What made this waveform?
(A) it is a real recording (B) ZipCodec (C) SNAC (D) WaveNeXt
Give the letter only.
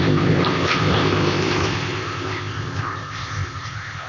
B